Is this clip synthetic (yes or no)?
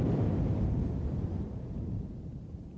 no